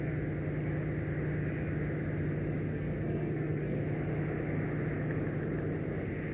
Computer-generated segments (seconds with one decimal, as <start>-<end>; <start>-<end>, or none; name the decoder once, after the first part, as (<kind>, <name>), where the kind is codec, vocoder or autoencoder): 2.7-3.8 (codec, SNAC)